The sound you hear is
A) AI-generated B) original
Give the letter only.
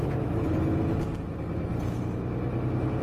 B